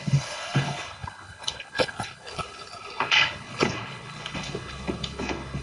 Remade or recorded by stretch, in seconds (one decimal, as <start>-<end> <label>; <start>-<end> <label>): 0.0-5.6 remade